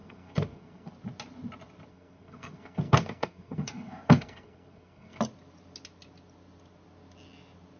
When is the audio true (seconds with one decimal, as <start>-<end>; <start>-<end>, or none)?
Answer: 0.9-1.9; 5.2-7.8